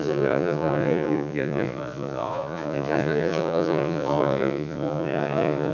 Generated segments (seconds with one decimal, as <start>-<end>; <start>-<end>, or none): 0.0-5.7